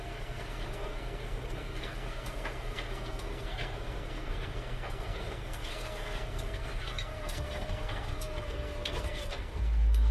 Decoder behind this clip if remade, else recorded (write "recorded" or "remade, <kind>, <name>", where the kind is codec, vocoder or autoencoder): remade, codec, SNAC